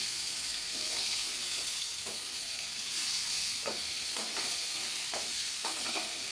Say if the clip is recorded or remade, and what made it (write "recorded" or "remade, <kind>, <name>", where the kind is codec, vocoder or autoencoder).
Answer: remade, codec, SNAC